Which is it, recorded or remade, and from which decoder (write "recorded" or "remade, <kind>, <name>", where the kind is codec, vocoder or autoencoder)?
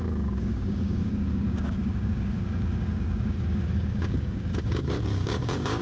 remade, codec, DAC